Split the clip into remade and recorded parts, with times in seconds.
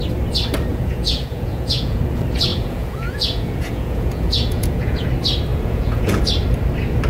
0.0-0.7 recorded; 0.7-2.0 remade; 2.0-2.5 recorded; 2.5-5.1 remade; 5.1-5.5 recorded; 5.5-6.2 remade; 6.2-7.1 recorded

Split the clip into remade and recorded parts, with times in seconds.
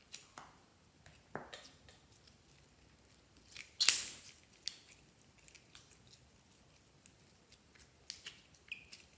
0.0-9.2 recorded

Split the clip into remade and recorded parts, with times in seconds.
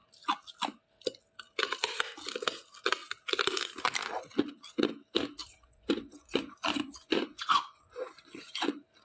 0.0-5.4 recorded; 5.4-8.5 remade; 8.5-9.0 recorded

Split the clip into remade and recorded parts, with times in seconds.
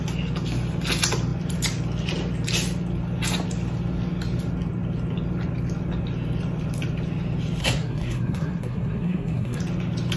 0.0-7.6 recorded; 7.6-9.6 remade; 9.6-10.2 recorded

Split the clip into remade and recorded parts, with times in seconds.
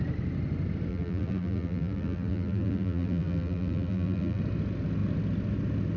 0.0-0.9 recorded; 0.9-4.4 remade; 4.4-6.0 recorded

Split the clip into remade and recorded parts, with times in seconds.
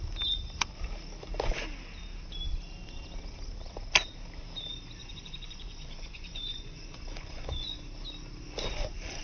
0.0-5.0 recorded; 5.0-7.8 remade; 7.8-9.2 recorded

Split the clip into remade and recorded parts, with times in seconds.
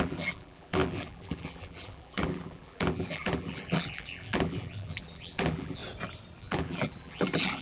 0.0-5.8 remade; 5.8-6.4 recorded; 6.4-7.6 remade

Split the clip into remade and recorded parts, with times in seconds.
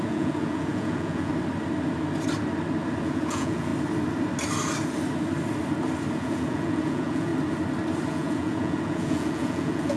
0.0-1.3 remade; 1.3-3.0 recorded; 3.0-3.7 remade; 3.7-6.1 recorded; 6.1-7.3 remade; 7.3-8.1 recorded; 8.1-10.0 remade